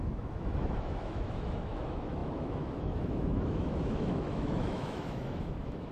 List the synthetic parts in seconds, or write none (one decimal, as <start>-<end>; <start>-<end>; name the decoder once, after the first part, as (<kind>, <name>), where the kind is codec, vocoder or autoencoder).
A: 0.0-5.9 (autoencoder, DAC-VAE)